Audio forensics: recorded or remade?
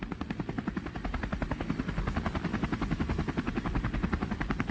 remade